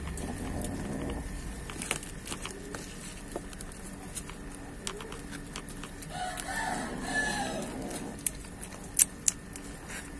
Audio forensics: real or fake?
real